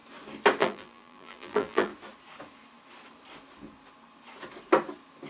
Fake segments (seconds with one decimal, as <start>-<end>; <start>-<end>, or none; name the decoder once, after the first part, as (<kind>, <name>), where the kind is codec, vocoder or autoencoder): 0.6-1.9 (vocoder, BigVGAN v2)